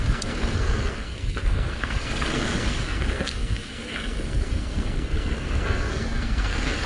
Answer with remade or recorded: remade